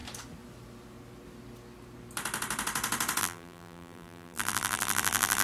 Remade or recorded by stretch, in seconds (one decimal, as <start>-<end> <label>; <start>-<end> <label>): 0.0-3.2 recorded; 3.2-5.4 remade

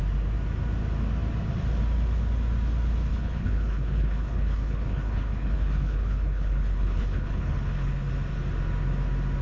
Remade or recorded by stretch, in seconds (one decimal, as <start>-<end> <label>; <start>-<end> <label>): 0.0-3.1 recorded; 3.1-8.1 remade; 8.1-9.4 recorded

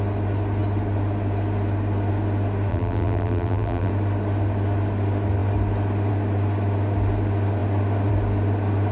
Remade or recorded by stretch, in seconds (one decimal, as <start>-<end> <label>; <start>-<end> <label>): 0.0-2.7 recorded; 2.7-3.9 remade; 3.9-8.9 recorded

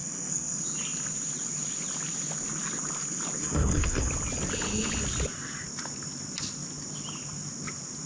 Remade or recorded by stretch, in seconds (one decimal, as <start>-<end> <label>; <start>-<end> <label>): 0.0-0.6 remade; 0.6-3.4 recorded; 3.4-4.1 remade; 4.1-8.1 recorded

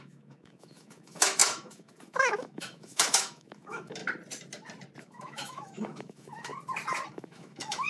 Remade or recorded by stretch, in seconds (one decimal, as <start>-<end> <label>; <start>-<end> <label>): 0.0-4.0 remade; 4.0-5.0 recorded; 5.0-6.5 remade; 6.5-7.1 recorded; 7.1-7.9 remade